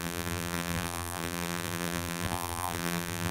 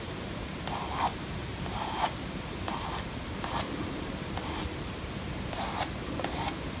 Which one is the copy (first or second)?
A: first